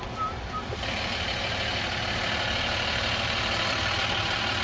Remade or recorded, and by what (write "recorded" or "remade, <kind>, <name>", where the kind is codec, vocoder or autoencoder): recorded